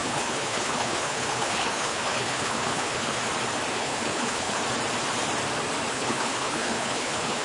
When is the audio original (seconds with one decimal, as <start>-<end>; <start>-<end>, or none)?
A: 3.2-3.7; 4.6-5.9